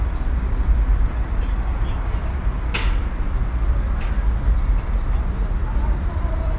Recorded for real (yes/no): yes